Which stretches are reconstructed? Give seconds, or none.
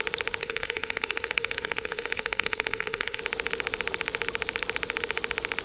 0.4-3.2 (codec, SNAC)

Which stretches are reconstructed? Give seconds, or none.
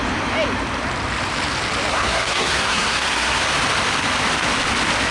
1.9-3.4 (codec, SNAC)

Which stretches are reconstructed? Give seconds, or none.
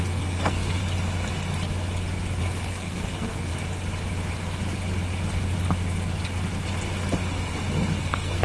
0.0-0.8 (codec, SNAC); 2.4-3.5; 8.0-8.4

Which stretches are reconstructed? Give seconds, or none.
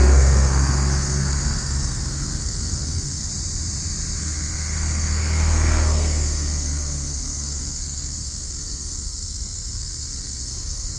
0.0-3.3 (codec, SNAC); 4.2-11.0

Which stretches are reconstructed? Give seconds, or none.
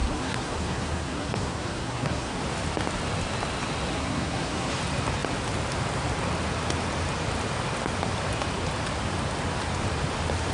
0.0-2.4 (codec, SNAC); 3.9-4.7